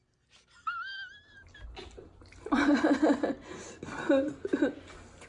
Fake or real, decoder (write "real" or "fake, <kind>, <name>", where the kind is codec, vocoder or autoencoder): real